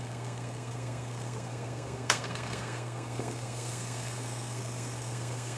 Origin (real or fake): fake